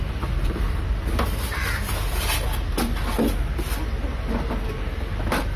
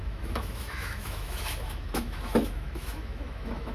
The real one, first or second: first